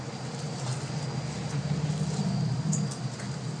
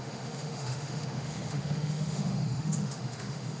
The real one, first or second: first